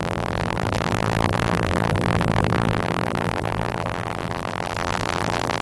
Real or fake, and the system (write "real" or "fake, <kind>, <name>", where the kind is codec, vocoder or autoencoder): fake, vocoder, BigVGAN v2